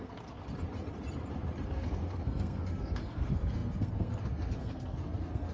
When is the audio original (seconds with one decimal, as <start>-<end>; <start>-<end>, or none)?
0.4-1.7